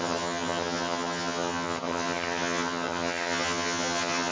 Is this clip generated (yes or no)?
yes